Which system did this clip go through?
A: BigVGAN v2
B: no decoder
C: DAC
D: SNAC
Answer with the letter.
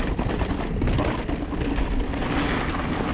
B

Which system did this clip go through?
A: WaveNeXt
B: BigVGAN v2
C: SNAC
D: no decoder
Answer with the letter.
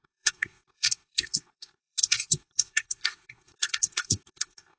C